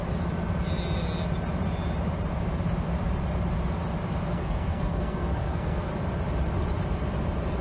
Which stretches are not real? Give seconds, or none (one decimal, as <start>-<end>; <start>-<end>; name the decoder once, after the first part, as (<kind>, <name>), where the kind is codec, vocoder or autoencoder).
4.3-5.9 (codec, SNAC)